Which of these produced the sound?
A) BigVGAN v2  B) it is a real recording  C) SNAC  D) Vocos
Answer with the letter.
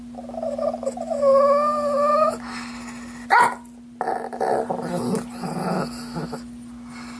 B